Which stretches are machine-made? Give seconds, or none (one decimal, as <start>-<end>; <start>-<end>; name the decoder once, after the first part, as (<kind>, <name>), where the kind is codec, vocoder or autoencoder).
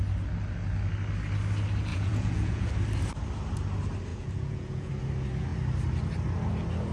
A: 1.9-2.7 (vocoder, Vocos); 4.1-4.9